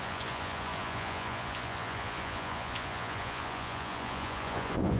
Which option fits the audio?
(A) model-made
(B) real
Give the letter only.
A